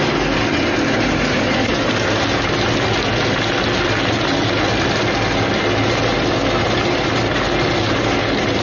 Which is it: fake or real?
real